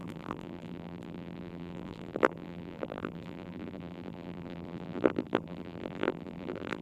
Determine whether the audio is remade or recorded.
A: remade